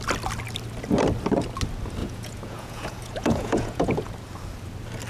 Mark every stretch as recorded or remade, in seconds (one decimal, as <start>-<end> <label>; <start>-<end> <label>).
0.0-2.0 recorded; 2.0-4.1 remade; 4.1-5.1 recorded